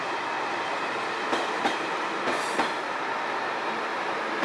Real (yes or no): yes